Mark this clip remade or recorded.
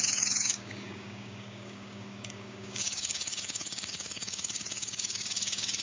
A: remade